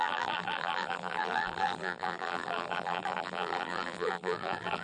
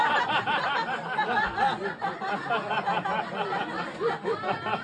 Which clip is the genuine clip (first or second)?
second